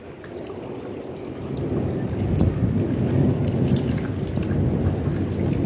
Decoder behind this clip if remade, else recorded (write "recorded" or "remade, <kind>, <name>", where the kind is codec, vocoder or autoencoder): recorded